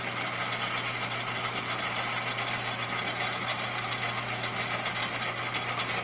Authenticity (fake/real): real